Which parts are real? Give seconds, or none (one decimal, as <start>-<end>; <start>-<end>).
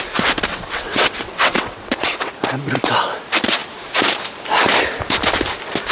0.0-0.5; 2.4-5.9